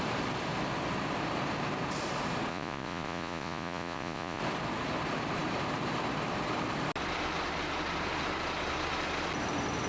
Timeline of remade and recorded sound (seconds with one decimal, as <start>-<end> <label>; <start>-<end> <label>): 0.0-2.5 recorded; 2.5-4.4 remade; 4.4-9.9 recorded